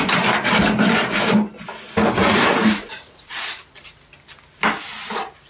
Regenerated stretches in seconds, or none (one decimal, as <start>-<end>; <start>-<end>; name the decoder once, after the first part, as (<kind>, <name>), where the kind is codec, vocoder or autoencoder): 2.2-3.7 (vocoder, Vocos)

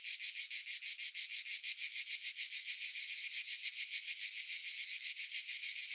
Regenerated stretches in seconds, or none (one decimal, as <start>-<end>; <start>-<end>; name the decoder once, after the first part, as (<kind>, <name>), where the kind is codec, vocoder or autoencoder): none

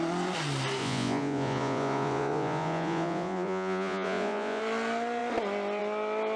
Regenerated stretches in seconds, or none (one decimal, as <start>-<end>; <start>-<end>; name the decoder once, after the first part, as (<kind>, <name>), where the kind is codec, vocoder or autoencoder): 0.8-4.6 (vocoder, Vocos)

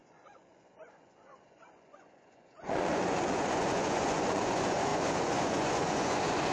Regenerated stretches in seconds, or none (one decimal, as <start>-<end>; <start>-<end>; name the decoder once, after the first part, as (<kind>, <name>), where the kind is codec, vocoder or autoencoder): 0.0-6.5 (vocoder, Vocos)

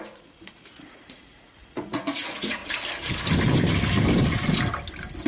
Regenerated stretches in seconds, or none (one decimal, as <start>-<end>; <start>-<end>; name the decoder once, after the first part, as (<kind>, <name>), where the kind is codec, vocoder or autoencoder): 0.0-2.6 (vocoder, Vocos)

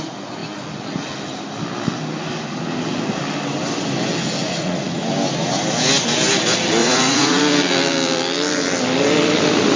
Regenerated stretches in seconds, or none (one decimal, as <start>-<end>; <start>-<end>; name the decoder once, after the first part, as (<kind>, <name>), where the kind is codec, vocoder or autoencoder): 4.4-5.0 (vocoder, Vocos); 6.8-7.4